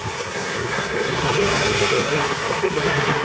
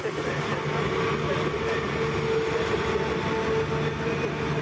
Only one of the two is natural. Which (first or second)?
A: second